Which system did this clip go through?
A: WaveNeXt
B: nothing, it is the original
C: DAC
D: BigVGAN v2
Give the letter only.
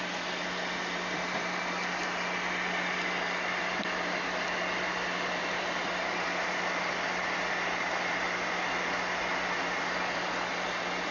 B